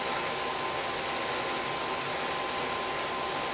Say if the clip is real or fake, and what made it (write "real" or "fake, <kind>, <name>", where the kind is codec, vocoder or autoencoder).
real